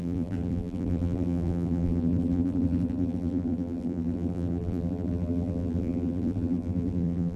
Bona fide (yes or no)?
no